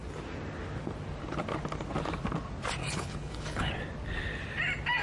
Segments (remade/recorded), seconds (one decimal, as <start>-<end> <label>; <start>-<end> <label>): 0.0-2.8 recorded; 2.8-3.7 remade; 3.7-5.0 recorded